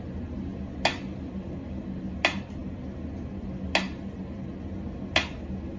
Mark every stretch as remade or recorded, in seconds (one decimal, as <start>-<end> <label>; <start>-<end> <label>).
0.0-5.8 recorded